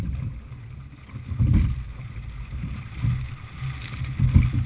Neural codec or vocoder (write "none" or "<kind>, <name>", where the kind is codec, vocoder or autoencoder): none